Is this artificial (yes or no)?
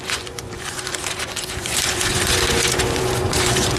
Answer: yes